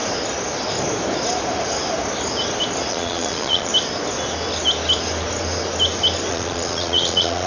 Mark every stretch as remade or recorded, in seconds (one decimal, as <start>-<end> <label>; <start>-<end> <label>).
0.0-2.9 recorded; 2.9-3.7 remade; 3.7-6.3 recorded; 6.3-7.5 remade